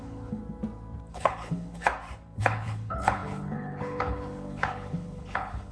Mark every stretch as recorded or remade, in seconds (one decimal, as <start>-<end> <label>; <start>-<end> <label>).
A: 0.0-0.4 remade; 0.4-1.1 recorded; 1.1-1.9 remade; 1.9-2.4 recorded; 2.4-5.7 remade